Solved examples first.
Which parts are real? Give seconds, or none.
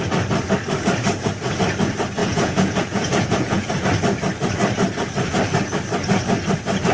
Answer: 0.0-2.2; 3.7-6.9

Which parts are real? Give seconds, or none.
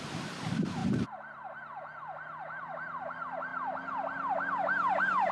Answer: 0.0-3.5; 4.5-5.3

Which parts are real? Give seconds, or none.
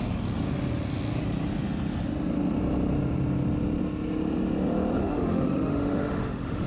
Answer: 0.0-5.0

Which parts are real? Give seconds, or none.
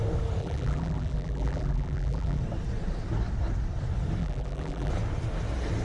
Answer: 0.0-0.4; 2.4-4.2; 4.9-5.8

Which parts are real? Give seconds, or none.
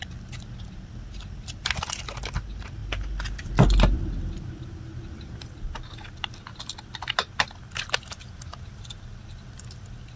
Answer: 0.0-10.2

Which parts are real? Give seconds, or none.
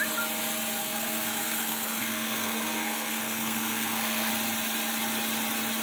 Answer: 0.0-0.8; 4.3-5.8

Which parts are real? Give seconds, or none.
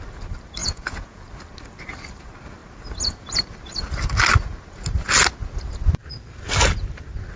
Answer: 0.0-0.6; 1.2-7.4